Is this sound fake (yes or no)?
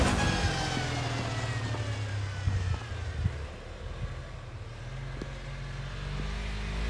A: no